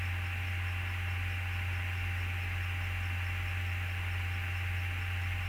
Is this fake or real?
real